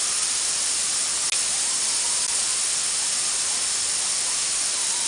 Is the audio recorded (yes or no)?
yes